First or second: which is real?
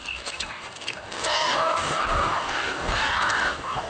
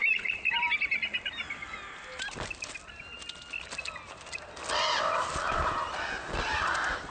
second